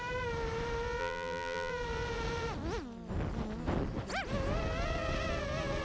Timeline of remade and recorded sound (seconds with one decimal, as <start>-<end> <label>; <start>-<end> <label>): 0.0-1.0 recorded; 1.0-1.7 remade; 1.7-5.8 recorded